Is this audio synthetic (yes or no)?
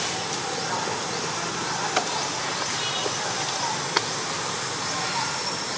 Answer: no